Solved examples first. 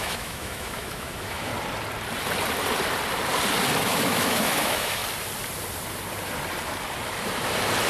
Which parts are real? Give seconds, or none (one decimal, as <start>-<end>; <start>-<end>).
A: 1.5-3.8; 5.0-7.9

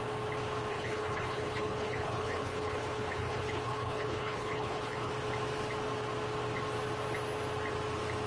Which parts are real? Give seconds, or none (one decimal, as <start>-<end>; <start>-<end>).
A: 0.0-0.7; 5.1-8.3

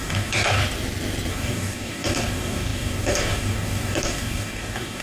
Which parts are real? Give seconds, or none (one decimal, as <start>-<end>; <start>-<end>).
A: 0.6-1.3

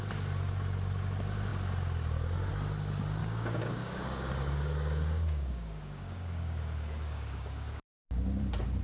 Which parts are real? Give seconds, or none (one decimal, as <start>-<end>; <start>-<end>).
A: 0.0-3.2; 8.0-8.8

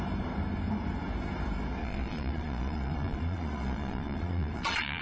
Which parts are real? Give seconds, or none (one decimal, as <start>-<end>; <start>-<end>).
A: 0.0-1.8

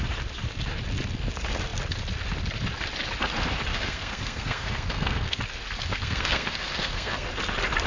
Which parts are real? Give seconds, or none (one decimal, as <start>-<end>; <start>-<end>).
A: 0.0-3.7; 5.4-5.9; 7.3-7.9

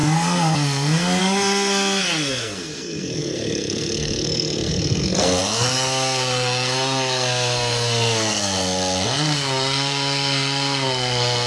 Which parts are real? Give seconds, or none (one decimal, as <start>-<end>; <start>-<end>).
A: none

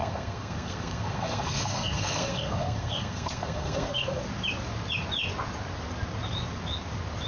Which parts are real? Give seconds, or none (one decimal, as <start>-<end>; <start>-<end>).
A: 4.2-7.3